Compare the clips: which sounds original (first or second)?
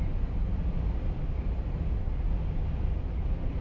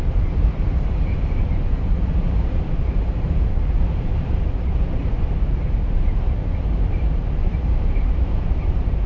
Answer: first